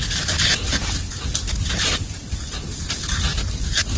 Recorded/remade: recorded